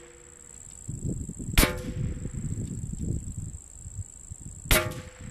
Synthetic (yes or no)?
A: no